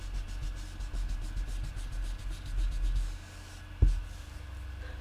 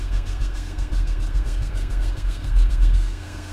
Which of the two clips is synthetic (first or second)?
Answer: second